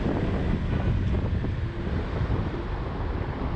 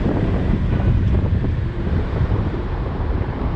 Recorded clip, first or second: first